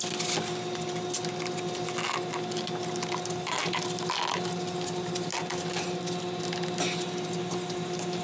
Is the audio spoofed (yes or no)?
no